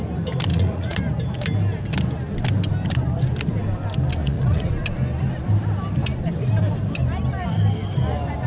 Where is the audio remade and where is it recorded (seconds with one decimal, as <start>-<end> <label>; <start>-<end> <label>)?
0.0-0.5 recorded; 0.5-1.0 remade; 1.0-4.2 recorded; 4.2-4.7 remade; 4.7-8.5 recorded